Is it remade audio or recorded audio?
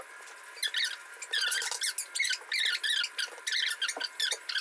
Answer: recorded